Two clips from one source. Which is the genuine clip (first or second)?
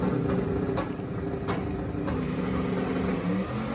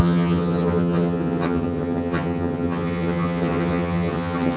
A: first